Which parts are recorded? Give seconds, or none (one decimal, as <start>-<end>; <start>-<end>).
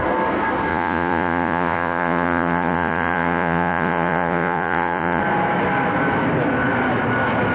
0.0-0.7; 5.2-7.5